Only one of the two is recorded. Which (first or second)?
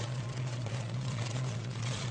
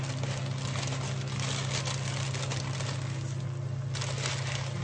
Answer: second